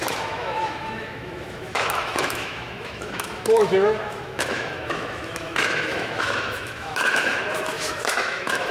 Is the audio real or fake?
fake